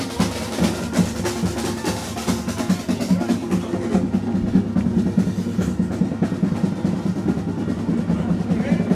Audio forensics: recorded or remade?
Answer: recorded